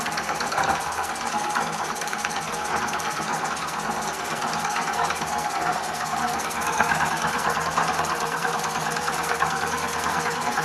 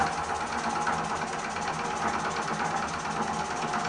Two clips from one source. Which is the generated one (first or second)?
first